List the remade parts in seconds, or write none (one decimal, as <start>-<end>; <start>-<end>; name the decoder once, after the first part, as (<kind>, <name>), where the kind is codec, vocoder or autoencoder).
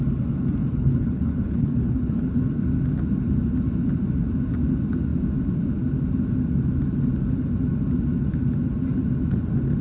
0.6-2.4 (codec, HILCodec)